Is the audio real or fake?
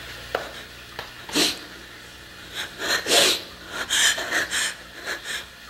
real